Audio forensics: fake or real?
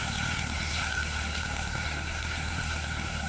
fake